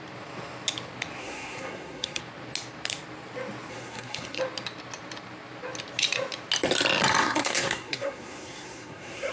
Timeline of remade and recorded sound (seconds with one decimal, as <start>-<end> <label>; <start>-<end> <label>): 0.0-1.2 recorded; 1.2-2.2 remade; 2.2-3.7 recorded; 3.7-4.4 remade; 4.4-7.2 recorded; 7.2-9.3 remade